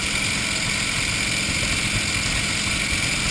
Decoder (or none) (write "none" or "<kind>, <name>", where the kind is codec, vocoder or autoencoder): none